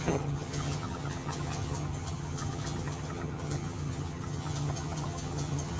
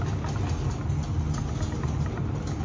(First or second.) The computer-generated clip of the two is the first